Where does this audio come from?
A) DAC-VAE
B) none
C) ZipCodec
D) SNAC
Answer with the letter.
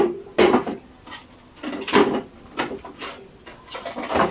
B